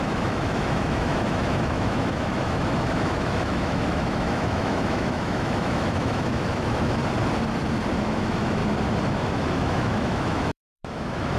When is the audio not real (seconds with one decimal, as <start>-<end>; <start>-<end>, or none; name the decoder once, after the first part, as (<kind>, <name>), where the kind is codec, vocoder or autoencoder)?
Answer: 0.0-7.0 (autoencoder, DAC-VAE); 8.0-8.6; 9.1-11.4